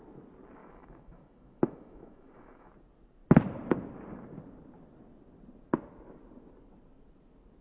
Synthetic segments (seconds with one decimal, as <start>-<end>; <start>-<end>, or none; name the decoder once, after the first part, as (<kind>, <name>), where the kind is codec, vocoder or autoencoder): 0.6-2.7 (autoencoder, DAC-VAE)